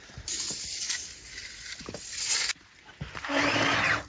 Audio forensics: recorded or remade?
recorded